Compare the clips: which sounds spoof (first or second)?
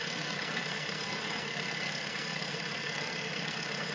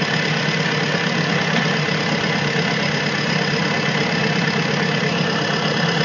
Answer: first